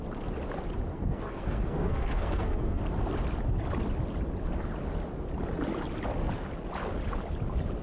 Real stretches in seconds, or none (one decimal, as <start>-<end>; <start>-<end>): 0.0-0.9; 2.8-7.8